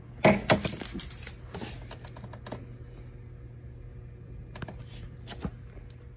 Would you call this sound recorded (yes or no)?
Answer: yes